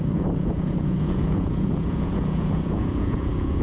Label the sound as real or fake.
fake